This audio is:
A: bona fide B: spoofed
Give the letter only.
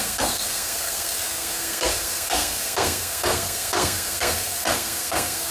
B